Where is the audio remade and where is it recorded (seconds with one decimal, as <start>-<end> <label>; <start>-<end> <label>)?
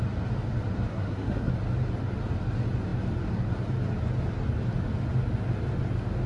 0.0-0.9 recorded; 0.9-1.5 remade; 1.5-6.3 recorded